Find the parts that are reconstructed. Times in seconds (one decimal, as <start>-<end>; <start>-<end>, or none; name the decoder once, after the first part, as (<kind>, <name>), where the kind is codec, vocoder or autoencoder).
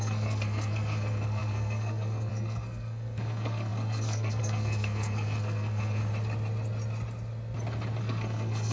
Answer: 0.0-6.0 (codec, SNAC); 8.0-8.7